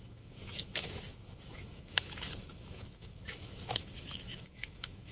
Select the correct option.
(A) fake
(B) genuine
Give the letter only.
A